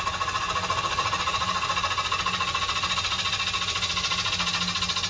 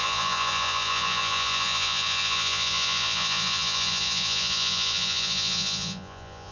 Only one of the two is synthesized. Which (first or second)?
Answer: second